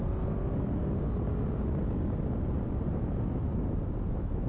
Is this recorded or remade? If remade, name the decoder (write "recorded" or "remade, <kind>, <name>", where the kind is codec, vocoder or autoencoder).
recorded